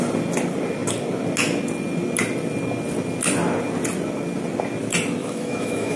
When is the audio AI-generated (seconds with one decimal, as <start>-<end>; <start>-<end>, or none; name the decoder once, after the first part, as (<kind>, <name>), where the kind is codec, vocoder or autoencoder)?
5.2-6.0 (autoencoder, DAC-VAE)